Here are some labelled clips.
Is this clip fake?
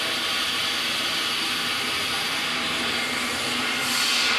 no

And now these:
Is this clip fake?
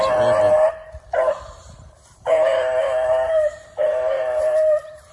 no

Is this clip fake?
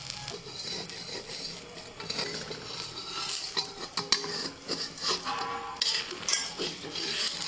no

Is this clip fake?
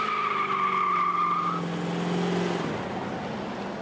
no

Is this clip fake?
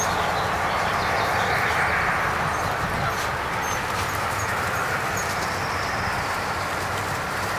no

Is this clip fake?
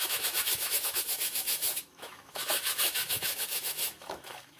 yes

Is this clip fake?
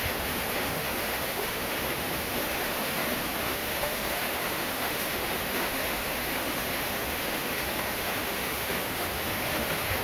yes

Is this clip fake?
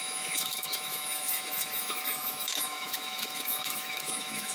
yes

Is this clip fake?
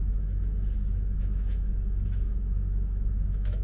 yes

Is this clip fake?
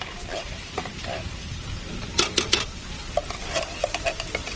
no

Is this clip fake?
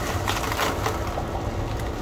no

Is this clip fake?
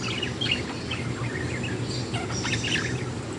no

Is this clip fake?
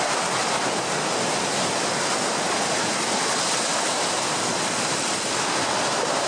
no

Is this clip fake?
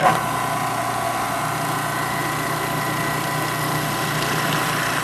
no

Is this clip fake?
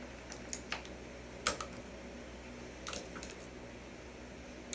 no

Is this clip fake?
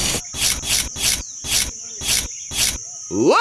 no